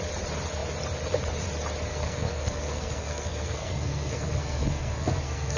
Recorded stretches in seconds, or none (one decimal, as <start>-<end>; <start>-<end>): 0.0-1.9